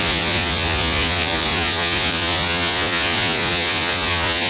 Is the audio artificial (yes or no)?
yes